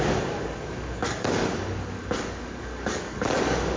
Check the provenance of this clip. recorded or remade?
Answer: remade